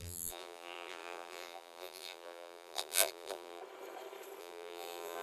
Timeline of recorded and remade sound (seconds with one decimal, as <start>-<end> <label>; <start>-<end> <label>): 0.0-3.6 remade; 3.6-4.4 recorded; 4.4-5.2 remade